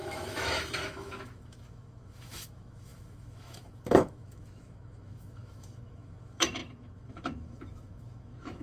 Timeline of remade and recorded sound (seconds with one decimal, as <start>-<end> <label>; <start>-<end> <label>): 0.0-8.6 remade